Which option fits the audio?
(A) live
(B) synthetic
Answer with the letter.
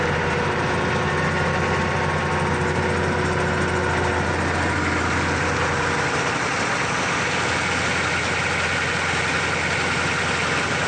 A